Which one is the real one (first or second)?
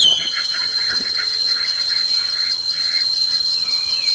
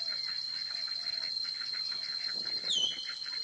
second